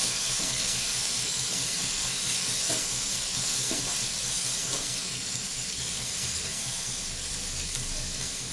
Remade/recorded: remade